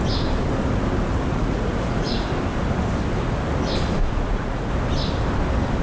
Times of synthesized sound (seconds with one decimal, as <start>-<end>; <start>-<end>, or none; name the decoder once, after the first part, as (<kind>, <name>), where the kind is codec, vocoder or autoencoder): 1.3-2.3 (vocoder, Vocos); 4.0-4.7